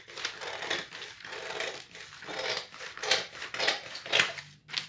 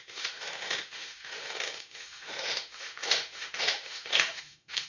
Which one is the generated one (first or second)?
second